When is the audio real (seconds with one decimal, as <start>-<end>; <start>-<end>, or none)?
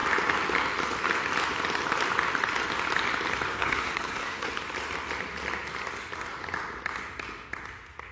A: 0.0-3.5; 4.5-8.1